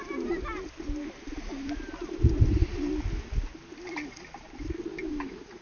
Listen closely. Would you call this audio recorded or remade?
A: recorded